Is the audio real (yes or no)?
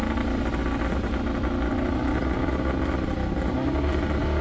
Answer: yes